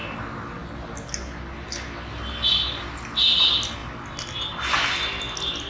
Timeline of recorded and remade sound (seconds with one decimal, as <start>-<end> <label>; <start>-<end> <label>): 0.0-5.7 recorded